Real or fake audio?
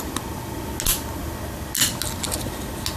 real